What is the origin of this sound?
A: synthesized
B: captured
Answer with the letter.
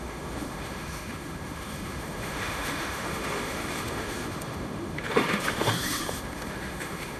A